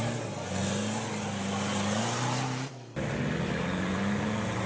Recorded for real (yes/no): yes